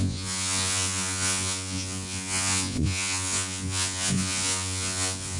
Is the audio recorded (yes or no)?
no